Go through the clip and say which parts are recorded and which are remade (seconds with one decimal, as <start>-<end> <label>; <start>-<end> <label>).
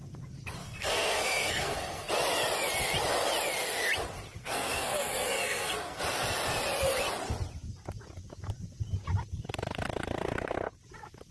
0.0-0.6 recorded; 0.6-2.1 remade; 2.1-4.4 recorded; 4.4-6.0 remade; 6.0-11.3 recorded